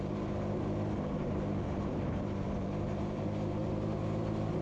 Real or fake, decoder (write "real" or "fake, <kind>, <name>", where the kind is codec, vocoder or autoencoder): fake, vocoder, BigVGAN v2